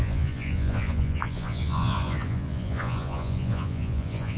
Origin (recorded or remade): remade